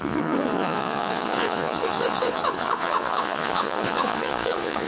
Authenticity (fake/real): fake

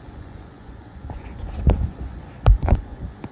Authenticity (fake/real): fake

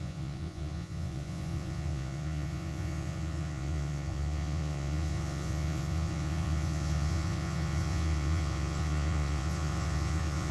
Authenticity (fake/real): fake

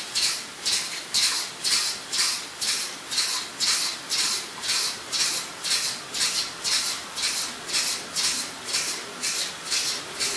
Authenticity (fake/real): real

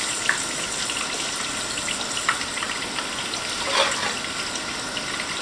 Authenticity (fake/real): real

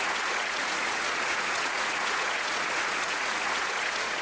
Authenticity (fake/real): fake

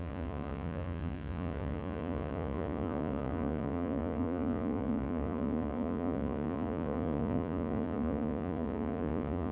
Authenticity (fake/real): fake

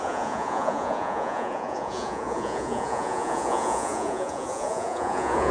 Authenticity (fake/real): fake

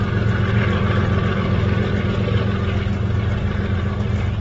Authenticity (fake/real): real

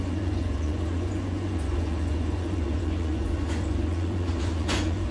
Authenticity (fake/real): fake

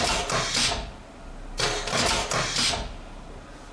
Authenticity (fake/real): real